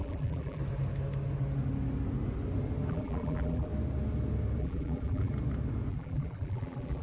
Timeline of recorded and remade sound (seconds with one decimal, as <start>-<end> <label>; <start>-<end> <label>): 0.0-0.6 remade; 0.6-2.9 recorded; 2.9-3.7 remade; 3.7-4.6 recorded; 4.6-5.3 remade; 5.3-5.9 recorded; 5.9-7.0 remade